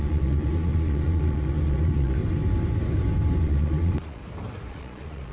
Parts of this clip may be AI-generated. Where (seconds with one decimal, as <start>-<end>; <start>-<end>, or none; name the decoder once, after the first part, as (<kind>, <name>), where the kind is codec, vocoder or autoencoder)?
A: 0.0-2.2 (vocoder, Vocos); 3.4-4.2; 4.7-5.3